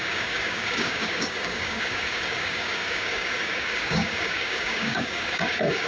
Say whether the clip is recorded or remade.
remade